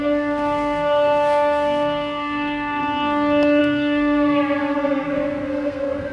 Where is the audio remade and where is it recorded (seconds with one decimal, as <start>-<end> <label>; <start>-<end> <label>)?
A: 0.0-2.8 remade; 2.8-3.6 recorded; 3.6-6.1 remade